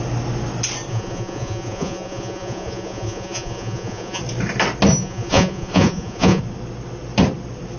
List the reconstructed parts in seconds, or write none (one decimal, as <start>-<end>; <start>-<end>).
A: 0.9-4.2; 5.0-6.4